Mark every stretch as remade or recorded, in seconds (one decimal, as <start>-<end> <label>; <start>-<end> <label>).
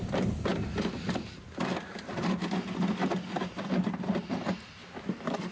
0.0-4.8 recorded; 4.8-5.5 remade